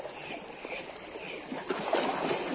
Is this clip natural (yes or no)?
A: yes